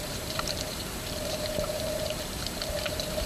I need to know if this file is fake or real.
fake